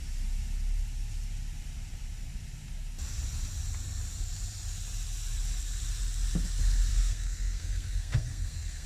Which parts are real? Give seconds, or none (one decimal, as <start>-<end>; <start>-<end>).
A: 0.0-6.9